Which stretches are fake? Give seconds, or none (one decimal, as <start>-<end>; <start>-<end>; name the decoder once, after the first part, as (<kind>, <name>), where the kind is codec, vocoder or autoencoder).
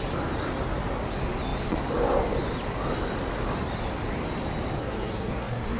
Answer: 4.8-5.8 (codec, SNAC)